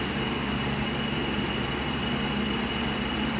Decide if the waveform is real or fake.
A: fake